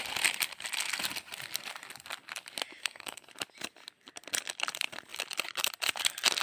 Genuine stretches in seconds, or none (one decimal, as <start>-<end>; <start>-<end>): 0.0-2.8; 3.3-6.4